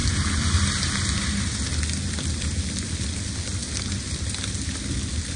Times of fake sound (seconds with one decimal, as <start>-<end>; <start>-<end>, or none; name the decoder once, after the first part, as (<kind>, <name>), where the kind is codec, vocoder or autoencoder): none